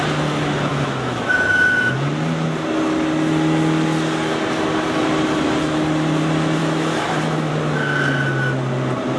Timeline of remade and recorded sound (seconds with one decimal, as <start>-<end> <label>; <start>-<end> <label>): 0.0-0.7 recorded; 0.7-1.9 remade; 1.9-6.6 recorded; 6.6-7.5 remade; 7.5-9.2 recorded